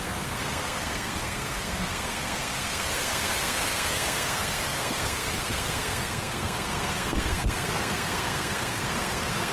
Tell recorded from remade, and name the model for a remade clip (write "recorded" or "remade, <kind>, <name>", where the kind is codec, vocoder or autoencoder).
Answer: remade, codec, SNAC